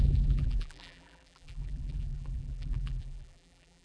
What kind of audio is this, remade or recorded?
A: remade